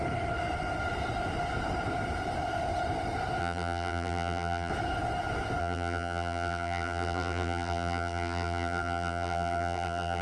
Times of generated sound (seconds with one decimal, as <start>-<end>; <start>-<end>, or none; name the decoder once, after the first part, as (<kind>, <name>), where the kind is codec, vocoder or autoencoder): 3.4-4.7 (vocoder, BigVGAN v2); 5.6-10.2